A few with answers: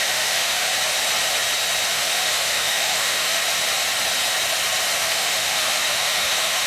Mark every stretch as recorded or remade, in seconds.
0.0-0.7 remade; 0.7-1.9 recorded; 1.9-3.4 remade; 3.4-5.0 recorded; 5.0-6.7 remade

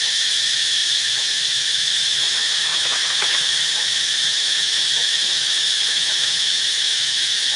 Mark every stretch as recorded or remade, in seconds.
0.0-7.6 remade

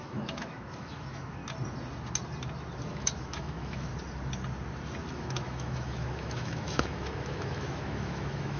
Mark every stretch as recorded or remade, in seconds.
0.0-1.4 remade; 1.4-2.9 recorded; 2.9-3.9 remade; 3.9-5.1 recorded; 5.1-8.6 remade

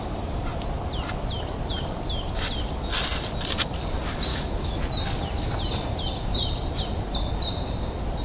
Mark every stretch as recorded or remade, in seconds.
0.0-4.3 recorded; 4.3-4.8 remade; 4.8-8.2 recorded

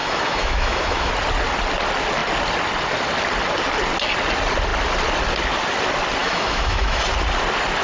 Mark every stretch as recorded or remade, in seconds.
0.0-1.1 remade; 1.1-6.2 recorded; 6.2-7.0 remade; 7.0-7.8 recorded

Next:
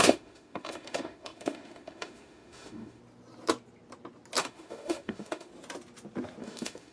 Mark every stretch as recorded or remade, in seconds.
0.0-3.0 remade; 3.0-4.4 recorded; 4.4-5.5 remade; 5.5-6.4 recorded; 6.4-6.9 remade

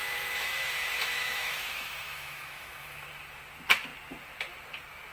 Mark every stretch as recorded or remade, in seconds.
0.0-3.1 remade; 3.1-5.1 recorded

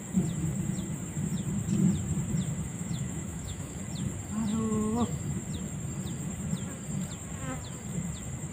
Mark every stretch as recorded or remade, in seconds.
0.0-2.7 recorded; 2.7-3.8 remade; 3.8-4.5 recorded; 4.5-5.2 remade; 5.2-8.5 recorded